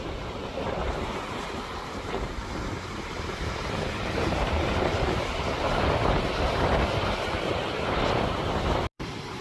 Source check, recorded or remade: remade